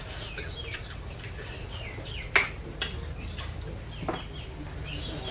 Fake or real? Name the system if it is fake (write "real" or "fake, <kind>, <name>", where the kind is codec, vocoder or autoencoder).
real